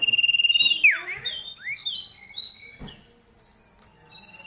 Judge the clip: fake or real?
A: real